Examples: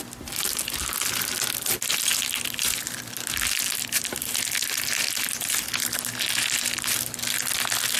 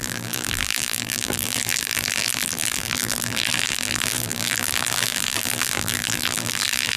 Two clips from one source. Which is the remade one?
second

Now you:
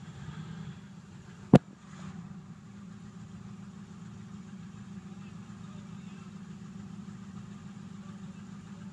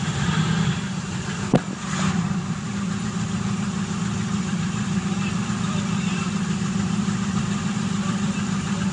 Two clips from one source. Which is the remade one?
second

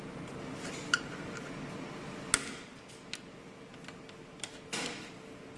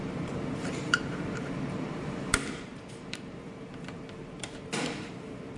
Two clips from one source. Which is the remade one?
second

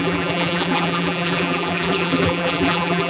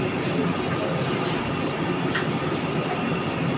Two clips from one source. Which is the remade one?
first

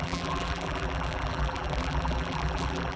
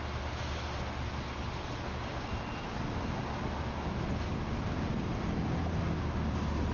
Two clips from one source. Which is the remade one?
first